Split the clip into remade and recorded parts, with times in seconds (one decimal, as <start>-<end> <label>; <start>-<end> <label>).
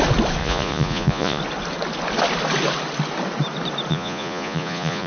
0.0-0.4 recorded; 0.4-1.4 remade; 1.4-3.9 recorded; 3.9-5.1 remade